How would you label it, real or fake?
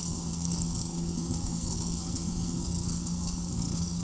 fake